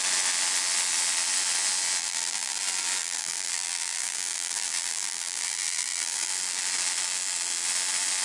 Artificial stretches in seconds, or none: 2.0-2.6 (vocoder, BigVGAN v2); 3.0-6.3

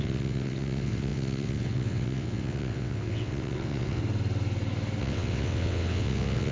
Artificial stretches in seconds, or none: 0.0-4.0 (vocoder, WaveNeXt); 5.0-6.5

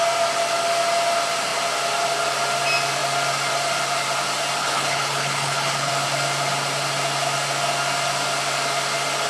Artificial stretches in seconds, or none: 4.6-5.9 (codec, HILCodec)